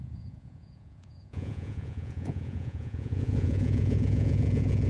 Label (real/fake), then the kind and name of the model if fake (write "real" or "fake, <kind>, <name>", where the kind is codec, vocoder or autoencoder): fake, vocoder, Vocos